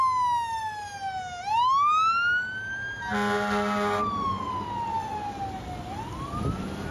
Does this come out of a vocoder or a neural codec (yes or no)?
no